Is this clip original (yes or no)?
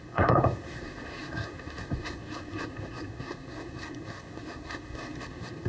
no